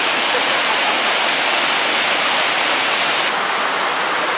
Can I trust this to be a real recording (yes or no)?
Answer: yes